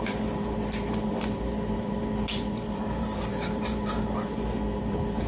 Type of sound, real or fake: fake